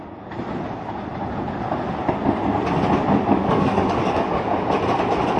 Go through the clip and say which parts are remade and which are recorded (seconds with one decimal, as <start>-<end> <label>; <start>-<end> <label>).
0.0-3.3 recorded; 3.3-4.5 remade; 4.5-5.4 recorded